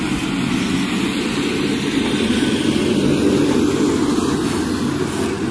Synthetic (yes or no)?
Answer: no